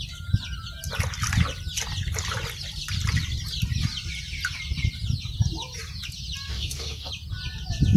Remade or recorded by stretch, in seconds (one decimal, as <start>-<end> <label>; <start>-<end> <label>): 0.0-6.5 recorded; 6.5-7.1 remade; 7.1-8.0 recorded